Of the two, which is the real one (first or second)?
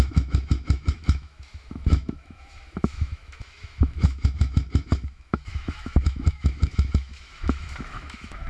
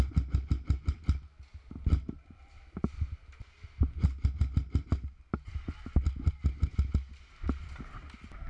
second